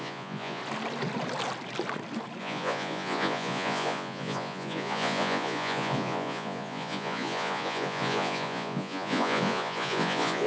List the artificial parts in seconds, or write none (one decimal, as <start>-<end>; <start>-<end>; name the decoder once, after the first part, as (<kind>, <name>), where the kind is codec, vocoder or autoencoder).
0.0-0.6 (vocoder, Vocos); 2.4-10.5